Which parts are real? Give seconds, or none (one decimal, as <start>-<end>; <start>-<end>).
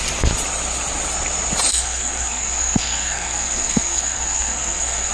0.0-1.7